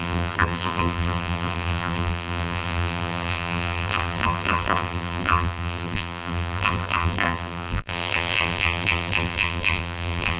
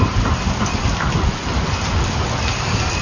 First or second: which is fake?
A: first